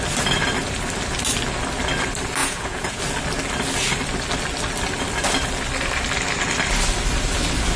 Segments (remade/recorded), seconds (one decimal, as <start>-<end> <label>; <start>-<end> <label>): 0.0-2.4 recorded; 2.4-3.0 remade; 3.0-7.8 recorded